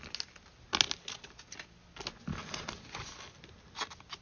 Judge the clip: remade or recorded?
recorded